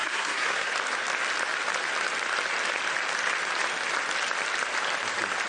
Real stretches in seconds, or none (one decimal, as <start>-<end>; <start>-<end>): 0.7-5.5